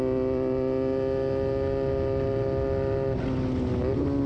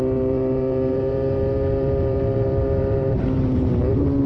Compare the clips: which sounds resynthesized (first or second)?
second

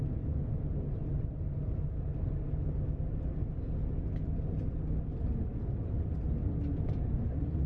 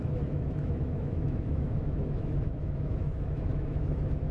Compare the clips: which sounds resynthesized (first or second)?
second